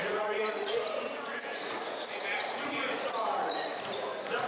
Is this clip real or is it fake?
fake